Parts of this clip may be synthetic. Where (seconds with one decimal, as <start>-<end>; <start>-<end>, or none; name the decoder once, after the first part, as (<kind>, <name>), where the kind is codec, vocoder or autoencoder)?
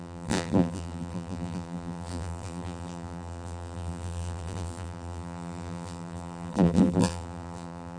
0.0-8.0 (vocoder, BigVGAN v2)